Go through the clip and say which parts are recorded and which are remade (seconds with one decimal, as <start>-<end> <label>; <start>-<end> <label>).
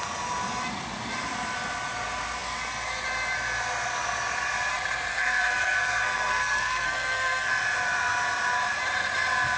0.0-5.1 recorded; 5.1-7.5 remade; 7.5-9.6 recorded